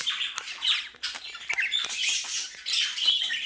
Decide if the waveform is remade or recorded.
recorded